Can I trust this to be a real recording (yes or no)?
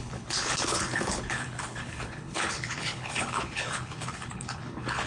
no